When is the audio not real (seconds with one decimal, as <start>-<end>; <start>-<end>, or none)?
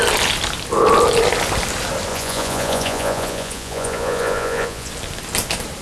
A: 2.1-4.9